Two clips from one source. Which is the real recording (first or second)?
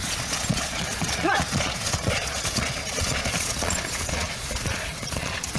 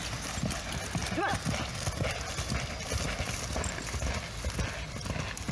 second